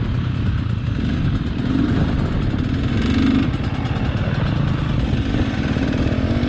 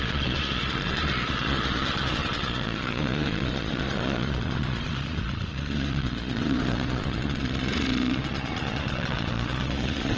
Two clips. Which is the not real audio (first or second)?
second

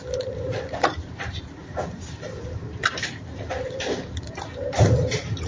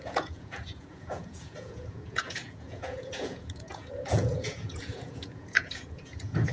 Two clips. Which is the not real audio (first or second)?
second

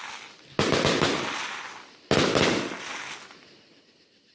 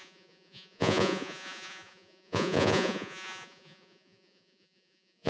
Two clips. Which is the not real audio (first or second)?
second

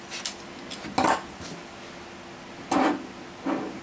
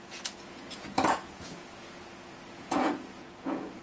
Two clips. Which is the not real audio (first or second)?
second